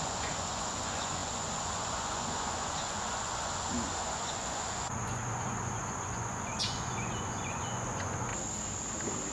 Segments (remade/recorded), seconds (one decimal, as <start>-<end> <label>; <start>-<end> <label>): 0.0-8.3 remade; 8.3-9.3 recorded